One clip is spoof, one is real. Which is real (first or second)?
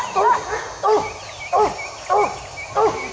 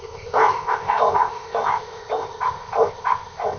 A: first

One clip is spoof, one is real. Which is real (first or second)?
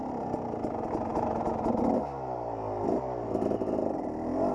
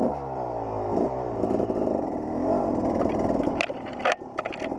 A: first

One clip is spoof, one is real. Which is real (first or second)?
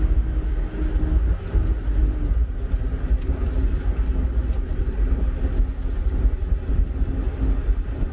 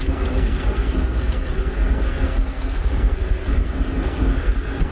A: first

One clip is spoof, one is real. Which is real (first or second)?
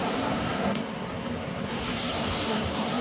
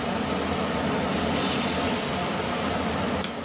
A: second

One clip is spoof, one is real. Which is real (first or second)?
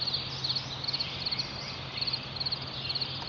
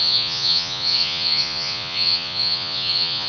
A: first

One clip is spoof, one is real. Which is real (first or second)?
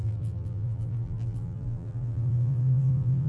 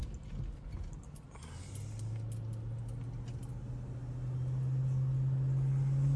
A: second